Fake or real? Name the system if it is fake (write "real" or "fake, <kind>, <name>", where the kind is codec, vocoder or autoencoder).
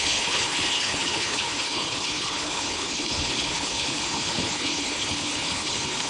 fake, codec, HILCodec